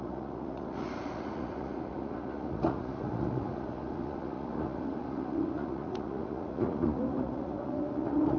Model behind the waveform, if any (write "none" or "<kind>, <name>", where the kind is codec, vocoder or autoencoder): vocoder, Vocos